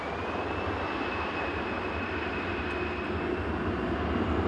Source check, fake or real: real